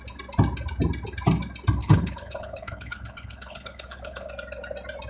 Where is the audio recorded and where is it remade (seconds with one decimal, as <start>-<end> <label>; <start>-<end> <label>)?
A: 0.0-1.8 recorded; 1.8-4.3 remade; 4.3-5.1 recorded